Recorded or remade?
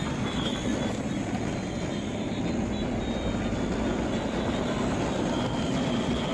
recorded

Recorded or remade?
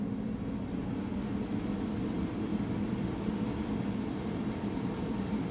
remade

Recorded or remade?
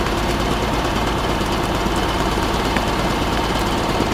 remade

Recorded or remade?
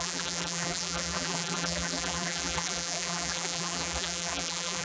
remade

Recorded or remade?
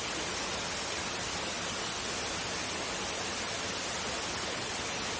recorded